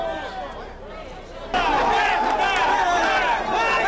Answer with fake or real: real